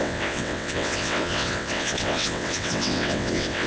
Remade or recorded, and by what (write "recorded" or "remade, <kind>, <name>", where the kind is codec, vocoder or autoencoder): remade, vocoder, WaveNeXt